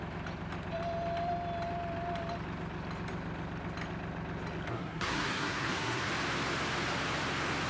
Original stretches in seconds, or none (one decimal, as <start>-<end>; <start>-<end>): 0.0-4.7; 6.1-7.7